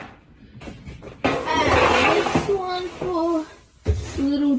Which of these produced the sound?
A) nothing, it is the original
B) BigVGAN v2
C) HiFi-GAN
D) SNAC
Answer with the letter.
A